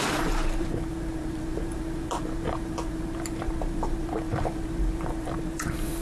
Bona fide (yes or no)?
no